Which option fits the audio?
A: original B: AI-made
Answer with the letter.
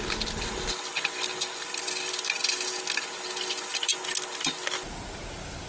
A